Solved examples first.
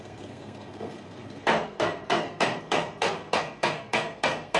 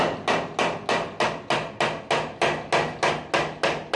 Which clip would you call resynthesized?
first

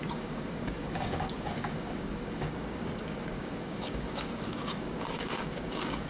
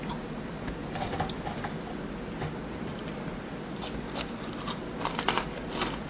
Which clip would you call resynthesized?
first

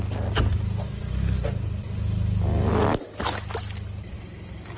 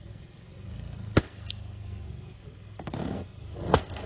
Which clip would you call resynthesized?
second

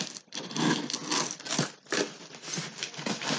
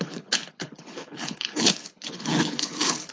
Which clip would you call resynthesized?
second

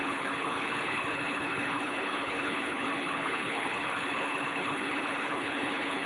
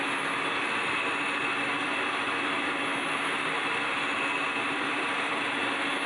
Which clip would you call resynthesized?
first